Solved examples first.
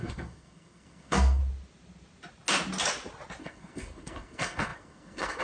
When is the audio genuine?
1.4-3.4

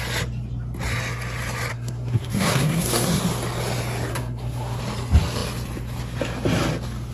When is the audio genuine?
0.0-1.7; 3.2-4.1; 4.8-7.1

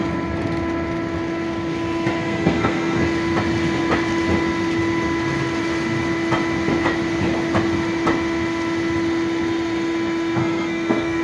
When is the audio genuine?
0.0-2.2; 3.0-10.4

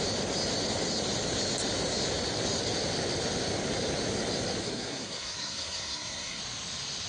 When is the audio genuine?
0.0-4.6; 6.4-7.1

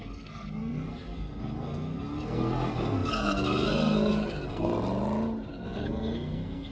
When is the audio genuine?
4.7-5.5

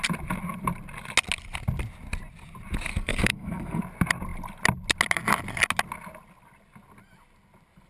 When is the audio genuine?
0.0-2.9; 3.8-7.9

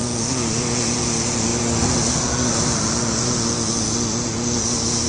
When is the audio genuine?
0.0-5.1